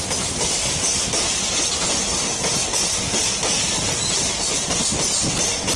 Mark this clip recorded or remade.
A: recorded